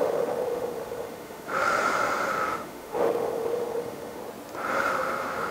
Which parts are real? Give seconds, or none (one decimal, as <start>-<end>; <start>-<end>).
1.7-2.3; 4.2-4.9